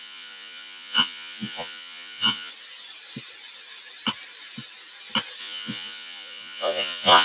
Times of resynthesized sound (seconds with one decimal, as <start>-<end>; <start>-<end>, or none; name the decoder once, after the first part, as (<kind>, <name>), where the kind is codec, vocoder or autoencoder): 0.0-2.5 (vocoder, Vocos); 5.4-7.2